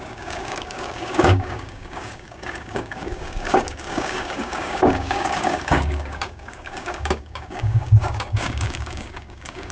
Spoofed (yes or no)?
yes